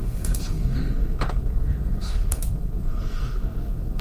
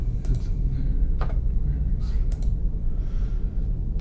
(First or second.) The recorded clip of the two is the second